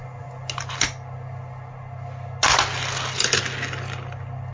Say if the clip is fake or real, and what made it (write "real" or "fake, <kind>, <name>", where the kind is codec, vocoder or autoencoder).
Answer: real